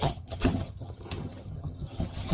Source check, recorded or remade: remade